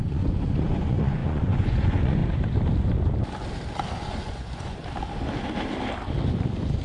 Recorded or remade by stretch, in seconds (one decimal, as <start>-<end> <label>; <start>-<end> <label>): 0.0-2.2 remade; 2.2-4.1 recorded; 4.1-4.8 remade; 4.8-6.8 recorded